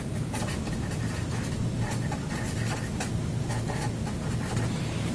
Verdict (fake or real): real